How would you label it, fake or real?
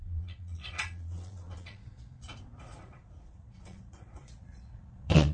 fake